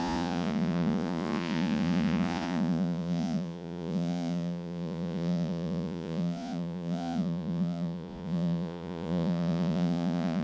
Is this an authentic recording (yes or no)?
no